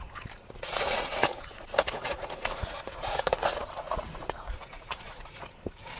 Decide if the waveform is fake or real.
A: fake